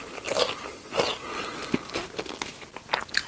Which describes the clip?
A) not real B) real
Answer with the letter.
B